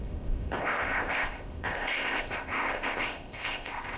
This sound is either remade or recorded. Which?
remade